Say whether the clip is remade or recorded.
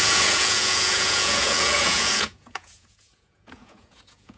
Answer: remade